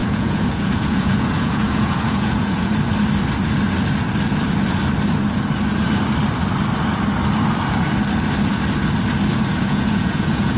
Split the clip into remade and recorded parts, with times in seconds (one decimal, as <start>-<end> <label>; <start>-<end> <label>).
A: 0.0-2.7 remade; 2.7-9.5 recorded; 9.5-10.6 remade